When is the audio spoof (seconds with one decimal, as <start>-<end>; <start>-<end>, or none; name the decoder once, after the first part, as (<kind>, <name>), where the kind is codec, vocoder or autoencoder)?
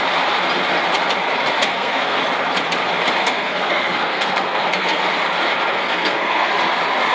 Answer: 1.7-2.2 (codec, SNAC); 3.2-5.0; 5.7-6.5